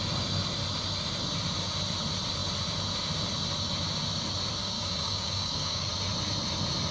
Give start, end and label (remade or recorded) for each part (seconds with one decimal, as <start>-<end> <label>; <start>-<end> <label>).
0.0-4.6 recorded; 4.6-5.9 remade; 5.9-6.9 recorded